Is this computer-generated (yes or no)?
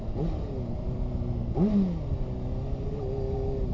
no